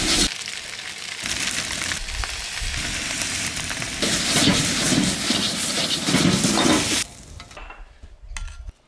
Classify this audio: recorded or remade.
recorded